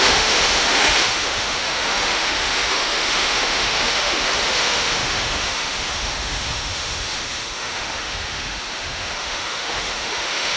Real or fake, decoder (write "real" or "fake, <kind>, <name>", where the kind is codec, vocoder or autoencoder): fake, autoencoder, DAC-VAE